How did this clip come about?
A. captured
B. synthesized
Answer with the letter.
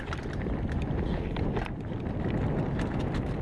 A